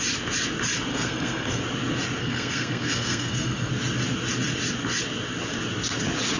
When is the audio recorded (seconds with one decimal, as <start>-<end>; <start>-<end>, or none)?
0.0-0.9; 1.6-2.2; 3.7-6.4